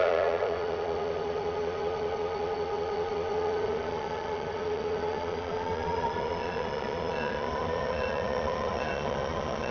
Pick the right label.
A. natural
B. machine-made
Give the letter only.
B